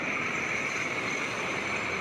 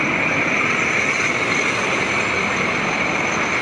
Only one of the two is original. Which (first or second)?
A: second